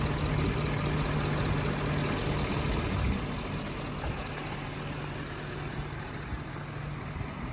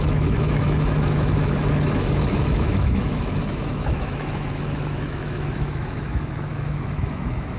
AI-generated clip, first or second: second